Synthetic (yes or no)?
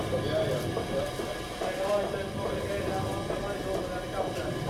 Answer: no